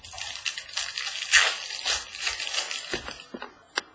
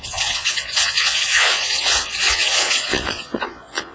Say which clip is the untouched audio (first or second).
first